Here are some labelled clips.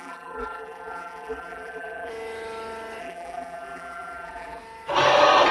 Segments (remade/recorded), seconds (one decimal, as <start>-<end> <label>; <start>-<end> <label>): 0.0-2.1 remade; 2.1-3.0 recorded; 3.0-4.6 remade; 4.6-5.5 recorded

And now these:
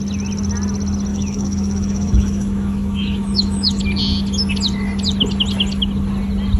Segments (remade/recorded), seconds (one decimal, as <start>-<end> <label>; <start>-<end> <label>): 0.0-1.1 recorded; 1.1-3.8 remade; 3.8-6.6 recorded

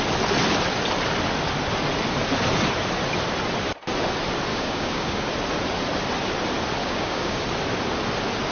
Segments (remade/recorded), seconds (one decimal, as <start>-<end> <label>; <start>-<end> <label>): 0.0-4.5 recorded; 4.5-5.2 remade; 5.2-6.8 recorded; 6.8-7.4 remade; 7.4-8.5 recorded